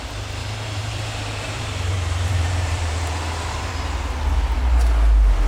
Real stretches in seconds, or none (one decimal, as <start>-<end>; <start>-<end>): 0.0-0.4; 3.7-5.5